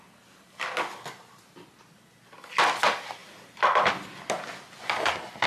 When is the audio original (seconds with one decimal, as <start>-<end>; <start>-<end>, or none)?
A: 0.0-3.2; 3.9-5.5